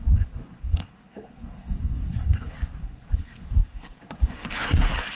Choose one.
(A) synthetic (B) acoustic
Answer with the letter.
A